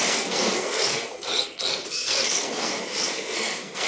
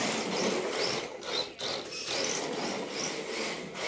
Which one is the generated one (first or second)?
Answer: first